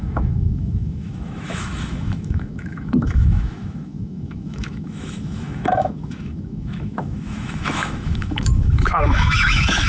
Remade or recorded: remade